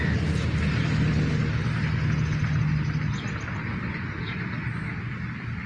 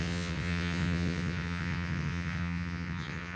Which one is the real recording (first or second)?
first